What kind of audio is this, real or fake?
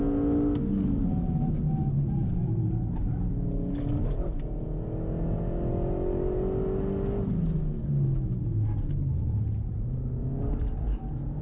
real